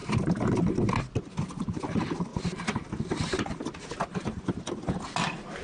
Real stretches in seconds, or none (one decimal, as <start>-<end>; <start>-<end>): 0.9-2.3; 2.9-5.6